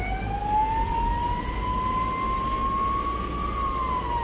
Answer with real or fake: real